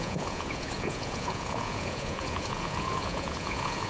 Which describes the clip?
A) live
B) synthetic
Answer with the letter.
B